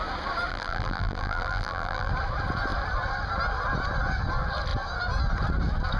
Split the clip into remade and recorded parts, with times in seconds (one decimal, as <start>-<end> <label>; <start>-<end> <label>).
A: 0.0-0.5 recorded; 0.5-2.1 remade; 2.1-6.0 recorded

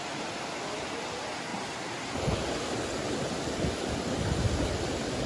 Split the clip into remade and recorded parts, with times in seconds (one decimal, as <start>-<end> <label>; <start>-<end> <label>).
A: 0.0-5.3 recorded

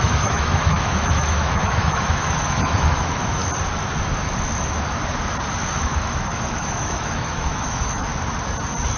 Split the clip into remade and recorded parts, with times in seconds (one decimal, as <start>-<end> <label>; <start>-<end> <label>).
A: 0.0-3.4 remade; 3.4-5.7 recorded; 5.7-8.1 remade; 8.1-9.0 recorded

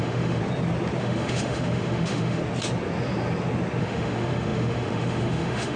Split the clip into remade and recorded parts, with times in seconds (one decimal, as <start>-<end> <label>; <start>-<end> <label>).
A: 0.0-0.4 remade; 0.4-1.0 recorded; 1.0-2.4 remade; 2.4-3.8 recorded; 3.8-5.8 remade